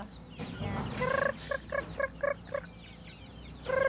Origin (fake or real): real